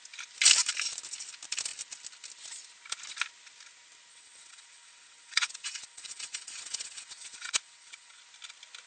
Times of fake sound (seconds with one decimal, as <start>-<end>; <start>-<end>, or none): 4.1-8.2